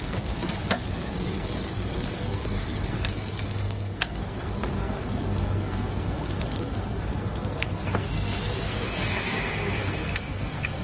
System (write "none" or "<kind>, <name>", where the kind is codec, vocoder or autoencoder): codec, SNAC